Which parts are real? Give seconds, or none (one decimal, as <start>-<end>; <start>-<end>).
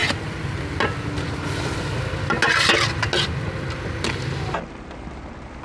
0.0-5.6